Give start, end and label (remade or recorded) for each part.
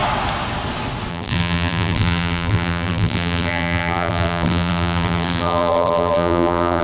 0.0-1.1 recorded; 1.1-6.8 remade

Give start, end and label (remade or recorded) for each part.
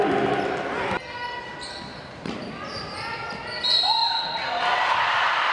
0.0-1.9 recorded; 1.9-2.5 remade; 2.5-5.5 recorded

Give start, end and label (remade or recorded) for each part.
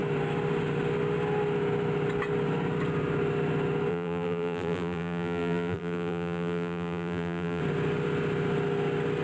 0.0-3.9 recorded; 3.9-7.6 remade; 7.6-9.2 recorded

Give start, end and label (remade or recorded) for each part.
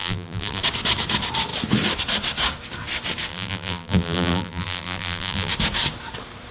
0.0-0.6 remade; 0.6-3.3 recorded; 3.3-5.5 remade; 5.5-6.5 recorded